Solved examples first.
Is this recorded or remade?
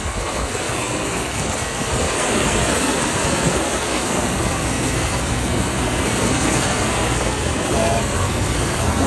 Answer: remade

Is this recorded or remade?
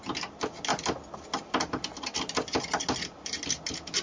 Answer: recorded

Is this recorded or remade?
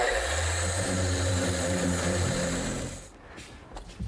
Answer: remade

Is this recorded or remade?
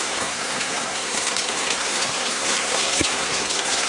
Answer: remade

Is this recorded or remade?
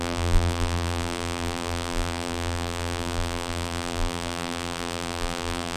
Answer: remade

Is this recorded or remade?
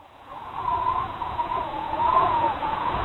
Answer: remade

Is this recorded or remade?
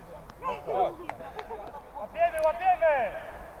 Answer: recorded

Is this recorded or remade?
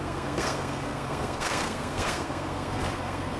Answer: remade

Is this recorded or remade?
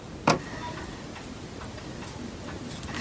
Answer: recorded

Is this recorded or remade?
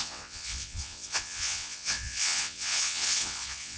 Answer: remade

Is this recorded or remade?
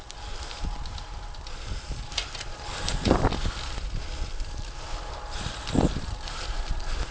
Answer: recorded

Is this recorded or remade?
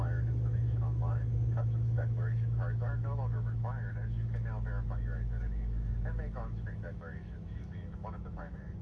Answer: remade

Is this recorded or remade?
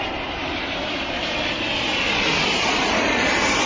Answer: recorded